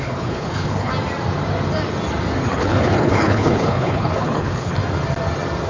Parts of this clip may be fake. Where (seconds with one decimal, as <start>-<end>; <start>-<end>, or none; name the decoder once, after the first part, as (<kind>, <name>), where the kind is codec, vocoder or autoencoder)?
0.0-0.9 (codec, HILCodec); 2.5-4.8